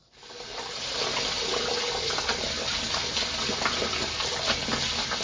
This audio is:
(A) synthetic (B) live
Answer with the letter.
B